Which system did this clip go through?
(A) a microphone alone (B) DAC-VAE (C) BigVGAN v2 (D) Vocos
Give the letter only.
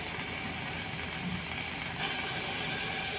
A